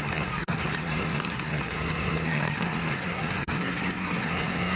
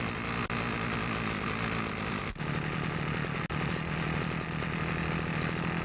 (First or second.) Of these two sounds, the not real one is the first